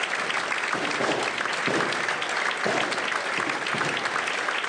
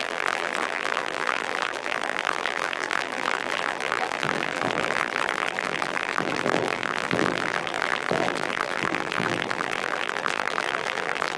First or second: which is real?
first